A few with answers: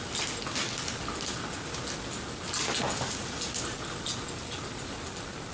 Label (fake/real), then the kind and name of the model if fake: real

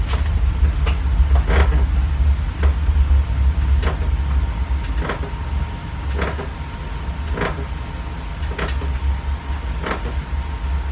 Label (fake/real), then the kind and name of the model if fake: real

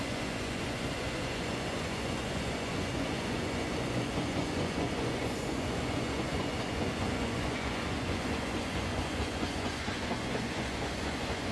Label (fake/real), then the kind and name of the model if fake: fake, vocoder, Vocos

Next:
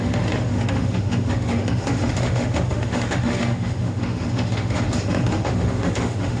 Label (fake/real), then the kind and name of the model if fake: fake, autoencoder, DAC-VAE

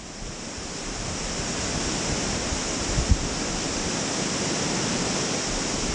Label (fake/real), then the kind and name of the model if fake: real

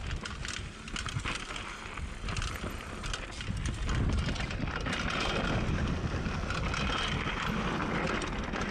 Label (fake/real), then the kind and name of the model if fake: real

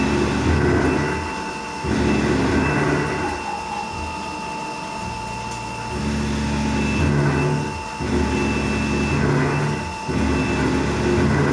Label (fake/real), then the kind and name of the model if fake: real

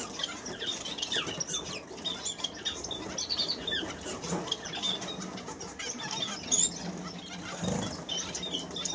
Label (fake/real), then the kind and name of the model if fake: real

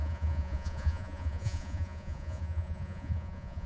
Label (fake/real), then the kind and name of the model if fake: fake, vocoder, Vocos